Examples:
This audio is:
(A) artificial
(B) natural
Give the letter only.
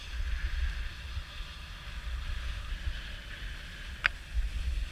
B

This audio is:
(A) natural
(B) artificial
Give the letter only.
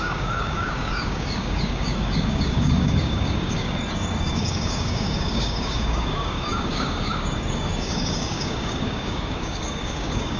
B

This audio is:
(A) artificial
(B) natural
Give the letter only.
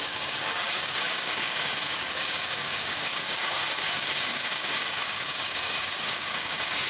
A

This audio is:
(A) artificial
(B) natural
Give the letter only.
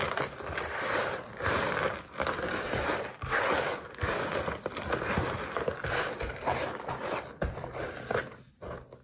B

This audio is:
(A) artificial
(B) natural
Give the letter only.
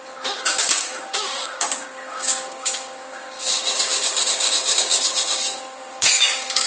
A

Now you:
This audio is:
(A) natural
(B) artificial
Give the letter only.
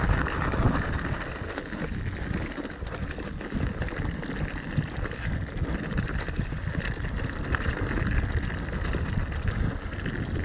A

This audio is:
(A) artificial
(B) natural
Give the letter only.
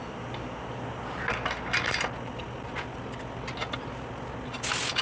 B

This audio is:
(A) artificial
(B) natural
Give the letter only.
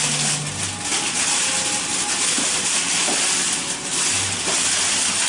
B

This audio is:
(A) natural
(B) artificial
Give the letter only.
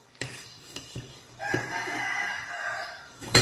B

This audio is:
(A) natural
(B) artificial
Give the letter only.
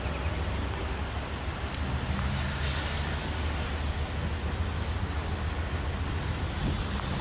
A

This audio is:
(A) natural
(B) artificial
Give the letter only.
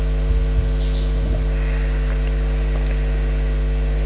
A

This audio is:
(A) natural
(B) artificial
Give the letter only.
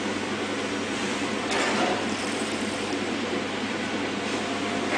A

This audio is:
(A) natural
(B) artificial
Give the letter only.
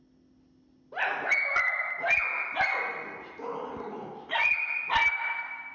A